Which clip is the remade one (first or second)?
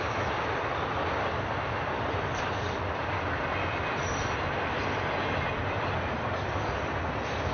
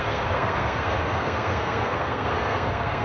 second